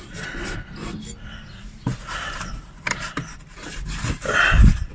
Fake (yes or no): no